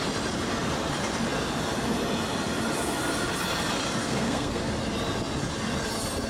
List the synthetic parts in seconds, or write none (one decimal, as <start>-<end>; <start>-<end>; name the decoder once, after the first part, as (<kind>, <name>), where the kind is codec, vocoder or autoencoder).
4.0-4.7 (codec, SNAC)